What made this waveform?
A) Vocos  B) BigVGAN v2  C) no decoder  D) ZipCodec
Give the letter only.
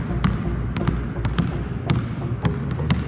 C